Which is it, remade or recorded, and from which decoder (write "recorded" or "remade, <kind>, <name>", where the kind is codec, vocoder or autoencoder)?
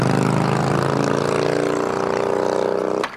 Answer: recorded